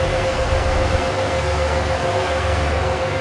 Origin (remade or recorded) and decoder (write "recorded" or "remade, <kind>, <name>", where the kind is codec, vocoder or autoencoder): remade, codec, SNAC